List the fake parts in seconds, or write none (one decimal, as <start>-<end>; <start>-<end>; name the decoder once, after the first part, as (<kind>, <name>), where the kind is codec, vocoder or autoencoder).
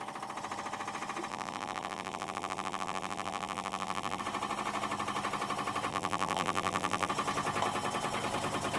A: 1.3-4.2 (vocoder, BigVGAN v2); 5.9-7.1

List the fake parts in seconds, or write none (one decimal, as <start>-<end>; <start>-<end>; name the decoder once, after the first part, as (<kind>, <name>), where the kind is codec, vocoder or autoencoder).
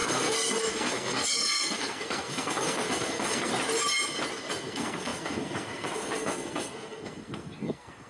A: 0.0-3.5 (codec, SNAC); 4.5-8.1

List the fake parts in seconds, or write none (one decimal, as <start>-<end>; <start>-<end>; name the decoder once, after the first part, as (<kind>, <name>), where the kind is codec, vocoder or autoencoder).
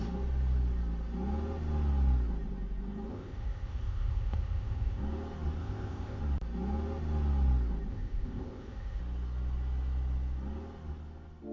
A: 3.1-5.0 (codec, ZipCodec); 5.6-6.2; 7.9-9.0